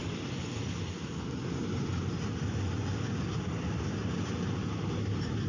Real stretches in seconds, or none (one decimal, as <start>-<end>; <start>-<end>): 0.0-5.5